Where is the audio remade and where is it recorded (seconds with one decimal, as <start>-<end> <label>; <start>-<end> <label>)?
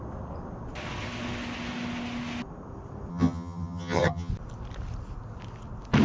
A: 0.0-3.1 recorded; 3.1-4.3 remade; 4.3-6.0 recorded